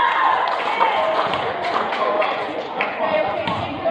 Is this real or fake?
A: fake